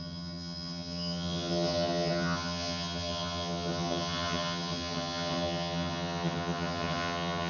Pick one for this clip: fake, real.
fake